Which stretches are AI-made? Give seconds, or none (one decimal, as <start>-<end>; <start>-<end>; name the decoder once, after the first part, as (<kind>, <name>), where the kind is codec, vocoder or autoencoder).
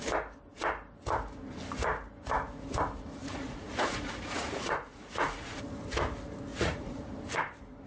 3.2-5.6 (vocoder, Vocos); 6.5-7.1